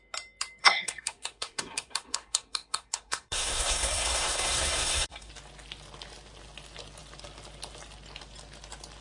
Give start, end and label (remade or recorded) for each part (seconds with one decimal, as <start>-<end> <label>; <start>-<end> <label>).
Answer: 0.0-0.6 recorded; 0.6-5.3 remade; 5.3-9.0 recorded